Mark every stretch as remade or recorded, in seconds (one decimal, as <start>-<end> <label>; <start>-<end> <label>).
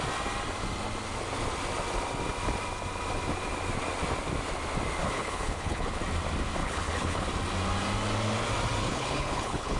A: 0.0-5.0 recorded; 5.0-6.0 remade; 6.0-6.6 recorded; 6.6-7.2 remade; 7.2-8.8 recorded; 8.8-9.8 remade